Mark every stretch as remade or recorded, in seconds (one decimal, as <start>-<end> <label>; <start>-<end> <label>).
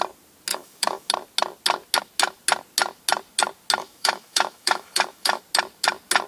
0.0-0.5 recorded; 0.5-1.1 remade; 1.1-3.8 recorded; 3.8-5.4 remade; 5.4-6.3 recorded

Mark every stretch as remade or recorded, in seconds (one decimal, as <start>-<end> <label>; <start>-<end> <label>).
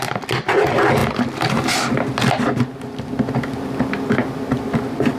0.0-5.2 recorded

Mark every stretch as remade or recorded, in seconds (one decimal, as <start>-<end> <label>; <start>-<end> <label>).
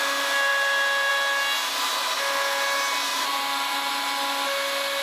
0.0-0.5 recorded; 0.5-1.1 remade; 1.1-3.1 recorded; 3.1-3.9 remade; 3.9-5.0 recorded